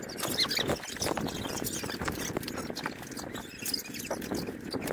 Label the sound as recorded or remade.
recorded